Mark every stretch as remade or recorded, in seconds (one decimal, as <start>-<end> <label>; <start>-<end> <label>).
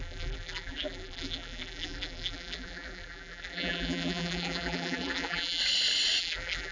0.0-5.6 remade; 5.6-6.2 recorded; 6.2-6.7 remade